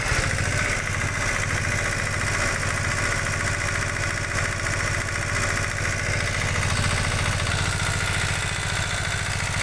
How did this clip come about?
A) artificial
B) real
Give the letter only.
B